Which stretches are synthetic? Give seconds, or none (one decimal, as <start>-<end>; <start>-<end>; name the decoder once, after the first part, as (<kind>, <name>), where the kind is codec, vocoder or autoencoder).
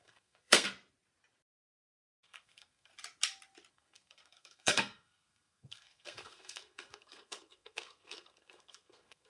0.0-0.7 (codec, SNAC); 1.5-2.9; 3.7-9.3